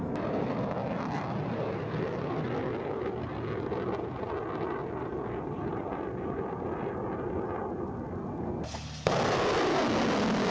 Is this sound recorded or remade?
recorded